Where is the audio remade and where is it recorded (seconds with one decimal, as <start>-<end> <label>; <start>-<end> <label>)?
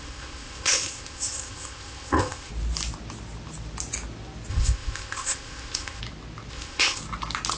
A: 0.0-2.5 remade; 2.5-4.5 recorded; 4.5-6.0 remade; 6.0-6.5 recorded; 6.5-7.0 remade; 7.0-7.6 recorded